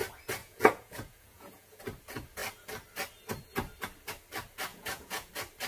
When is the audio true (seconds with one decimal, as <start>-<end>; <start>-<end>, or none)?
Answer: 0.0-0.4; 1.8-4.7; 5.3-5.7